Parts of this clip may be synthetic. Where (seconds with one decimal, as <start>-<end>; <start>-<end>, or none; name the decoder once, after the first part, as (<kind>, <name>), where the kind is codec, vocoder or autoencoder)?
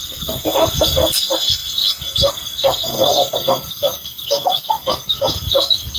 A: 0.0-6.0 (codec, SNAC)